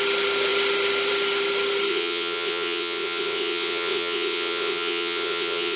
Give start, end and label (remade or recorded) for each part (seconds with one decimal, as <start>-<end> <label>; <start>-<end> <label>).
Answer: 0.0-1.9 recorded; 1.9-5.8 remade